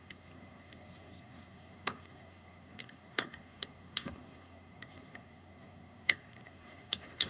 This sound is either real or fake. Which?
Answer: fake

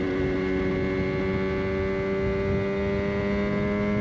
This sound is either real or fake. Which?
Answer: real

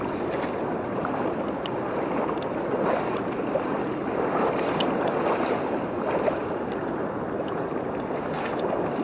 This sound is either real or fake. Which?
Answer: real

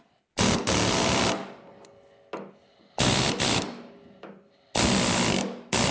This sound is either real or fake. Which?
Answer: real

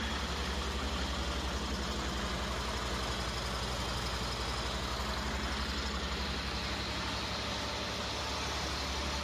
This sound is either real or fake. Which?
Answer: real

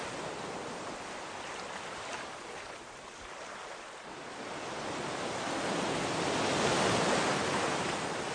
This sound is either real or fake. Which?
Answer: real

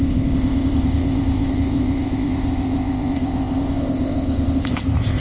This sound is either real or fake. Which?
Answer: fake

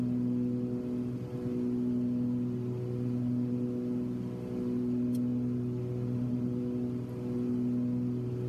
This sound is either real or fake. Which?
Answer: real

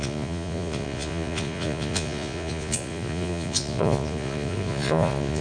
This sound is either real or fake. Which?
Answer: fake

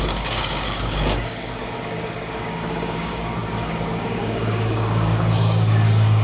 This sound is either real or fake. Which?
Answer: fake